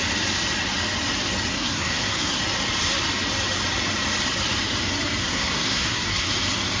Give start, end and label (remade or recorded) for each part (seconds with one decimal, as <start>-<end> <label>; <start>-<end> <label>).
0.0-1.5 recorded; 1.5-2.4 remade; 2.4-5.2 recorded; 5.2-6.3 remade; 6.3-6.8 recorded